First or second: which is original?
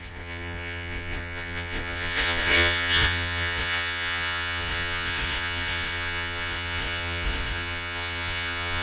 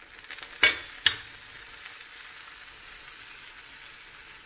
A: second